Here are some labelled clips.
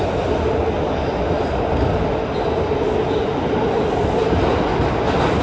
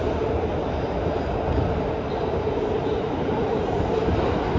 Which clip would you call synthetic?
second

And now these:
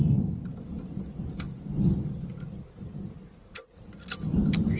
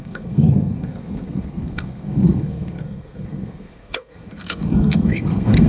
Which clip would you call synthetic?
second